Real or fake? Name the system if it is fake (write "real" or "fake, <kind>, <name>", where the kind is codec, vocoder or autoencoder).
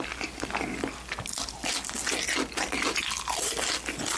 real